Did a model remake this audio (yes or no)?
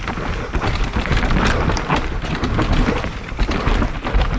no